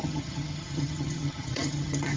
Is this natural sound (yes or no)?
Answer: no